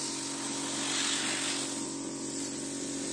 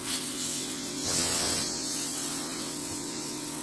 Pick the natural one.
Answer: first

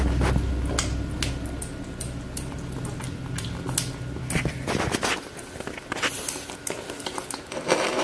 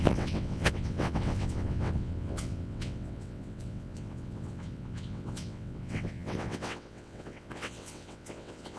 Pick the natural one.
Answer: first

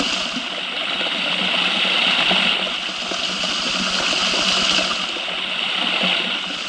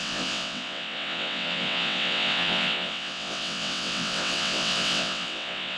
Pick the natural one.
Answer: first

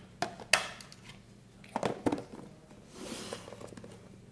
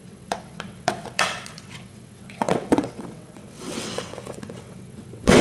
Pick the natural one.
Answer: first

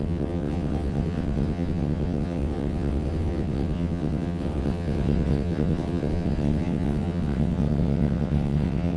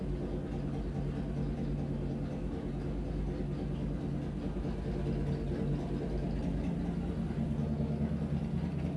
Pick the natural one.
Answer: second